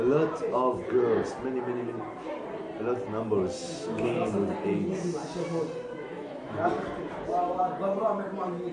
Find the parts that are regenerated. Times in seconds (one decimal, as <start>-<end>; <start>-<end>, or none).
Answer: 3.6-4.3; 6.1-6.7